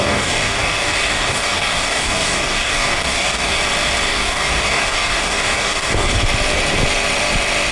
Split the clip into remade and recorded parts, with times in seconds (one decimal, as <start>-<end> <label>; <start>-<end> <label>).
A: 0.0-3.6 remade; 3.6-4.1 recorded; 4.1-6.2 remade; 6.2-7.7 recorded